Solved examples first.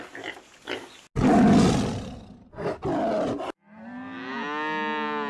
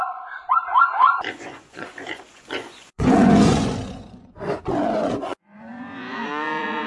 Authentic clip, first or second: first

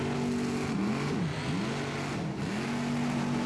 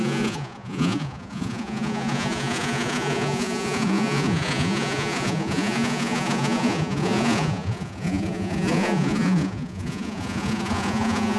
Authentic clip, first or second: first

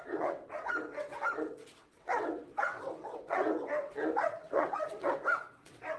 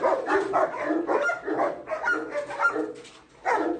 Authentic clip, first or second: second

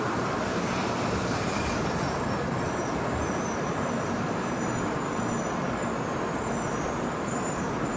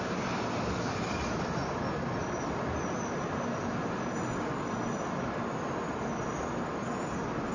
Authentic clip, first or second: second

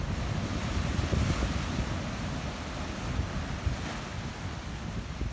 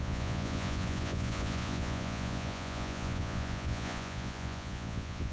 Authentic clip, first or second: first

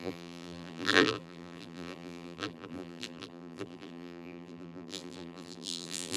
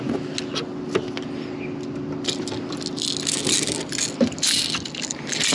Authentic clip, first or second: second